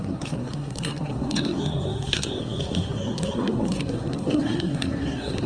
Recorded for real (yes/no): no